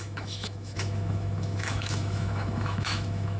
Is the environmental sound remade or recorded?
remade